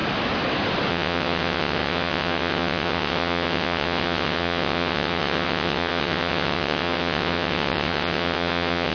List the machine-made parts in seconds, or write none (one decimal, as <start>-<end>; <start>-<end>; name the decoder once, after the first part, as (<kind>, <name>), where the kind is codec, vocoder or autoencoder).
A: 0.9-8.9 (vocoder, WaveNeXt)